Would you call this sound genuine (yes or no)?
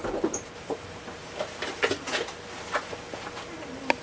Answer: yes